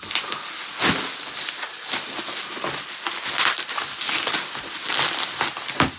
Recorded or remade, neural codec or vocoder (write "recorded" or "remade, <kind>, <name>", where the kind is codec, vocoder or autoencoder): recorded